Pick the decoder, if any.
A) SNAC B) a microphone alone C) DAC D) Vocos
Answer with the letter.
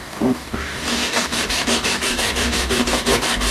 C